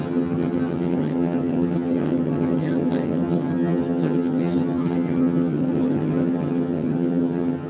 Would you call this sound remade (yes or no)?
yes